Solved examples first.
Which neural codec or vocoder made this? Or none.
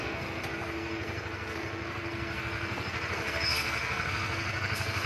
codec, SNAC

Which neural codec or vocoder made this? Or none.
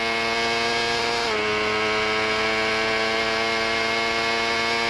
none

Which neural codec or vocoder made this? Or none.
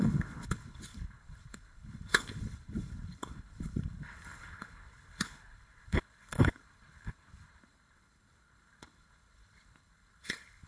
codec, HILCodec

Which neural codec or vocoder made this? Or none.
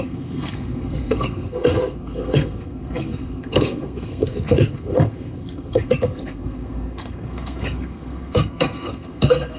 codec, SNAC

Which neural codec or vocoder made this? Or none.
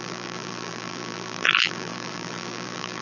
vocoder, BigVGAN v2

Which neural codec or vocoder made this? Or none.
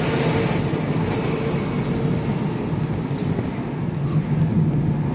none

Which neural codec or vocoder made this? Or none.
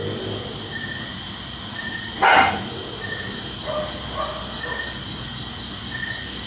none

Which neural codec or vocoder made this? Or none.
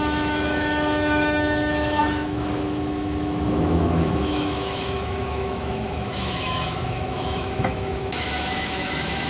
autoencoder, DAC-VAE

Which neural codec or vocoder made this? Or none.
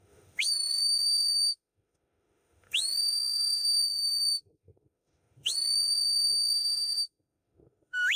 autoencoder, DAC-VAE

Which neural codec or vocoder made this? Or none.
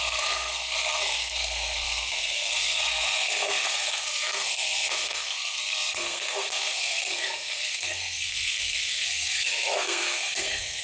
codec, SNAC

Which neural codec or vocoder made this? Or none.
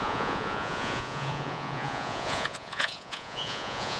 vocoder, Vocos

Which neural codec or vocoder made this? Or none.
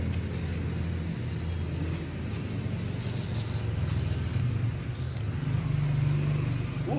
none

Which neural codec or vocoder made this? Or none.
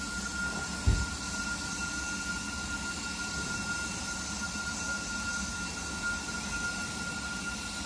none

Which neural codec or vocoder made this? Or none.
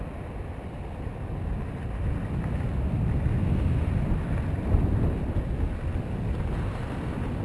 none